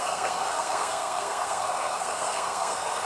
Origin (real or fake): fake